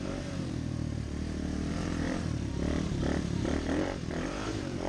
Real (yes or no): no